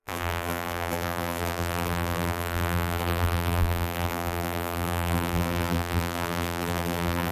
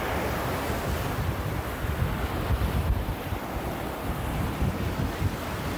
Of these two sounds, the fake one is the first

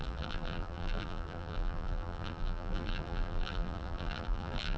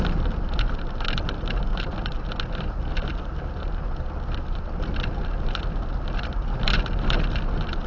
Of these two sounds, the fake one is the first